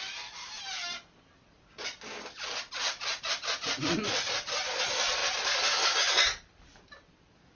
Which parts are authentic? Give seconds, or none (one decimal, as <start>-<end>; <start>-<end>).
0.0-7.5